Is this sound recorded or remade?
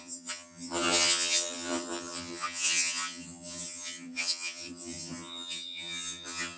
remade